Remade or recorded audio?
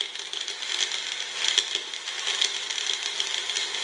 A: recorded